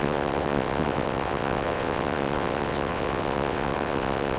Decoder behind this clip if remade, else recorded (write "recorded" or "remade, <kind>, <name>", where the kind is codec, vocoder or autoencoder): remade, vocoder, WaveNeXt